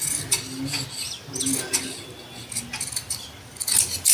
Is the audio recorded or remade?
recorded